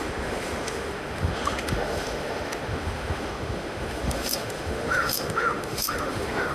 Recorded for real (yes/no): no